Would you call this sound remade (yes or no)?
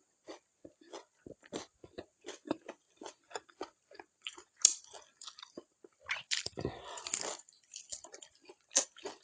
yes